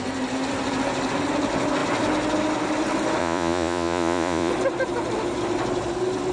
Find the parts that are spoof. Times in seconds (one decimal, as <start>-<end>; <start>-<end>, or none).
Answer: 3.2-4.5